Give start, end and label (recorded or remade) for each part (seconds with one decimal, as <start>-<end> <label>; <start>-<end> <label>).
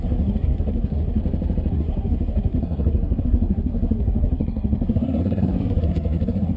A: 0.0-1.2 remade; 1.2-1.7 recorded; 1.7-6.6 remade